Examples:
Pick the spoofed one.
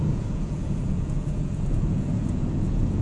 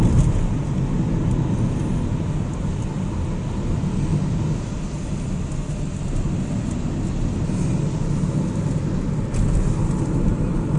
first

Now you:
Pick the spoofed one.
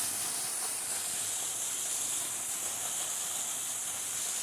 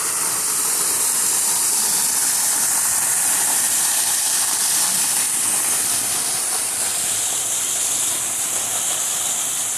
second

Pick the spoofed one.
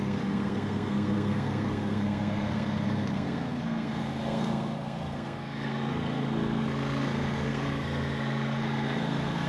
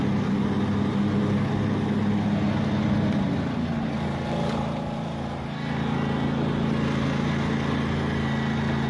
first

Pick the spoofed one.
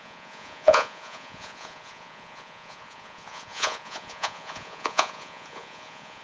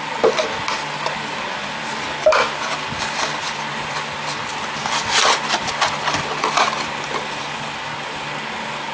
first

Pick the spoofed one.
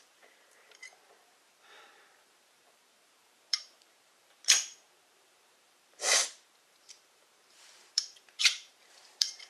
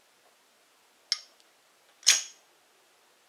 first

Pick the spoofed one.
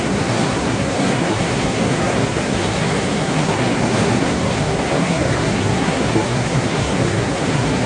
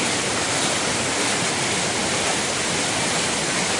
first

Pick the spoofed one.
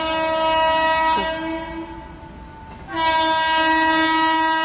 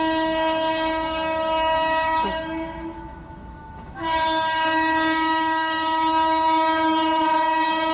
second